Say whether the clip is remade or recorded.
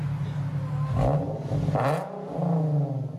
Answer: recorded